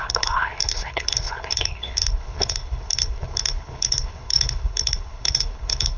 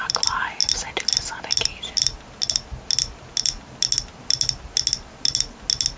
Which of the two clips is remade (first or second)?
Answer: first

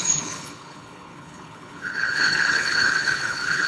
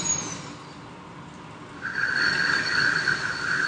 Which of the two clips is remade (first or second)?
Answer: first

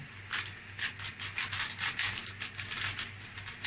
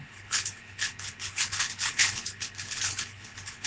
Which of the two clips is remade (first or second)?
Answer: second